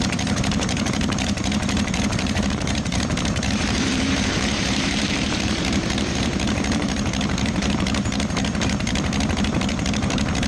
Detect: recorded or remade remade